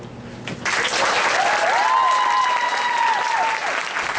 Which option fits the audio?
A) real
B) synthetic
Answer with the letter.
A